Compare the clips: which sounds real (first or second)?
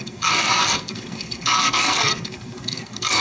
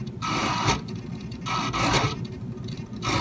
second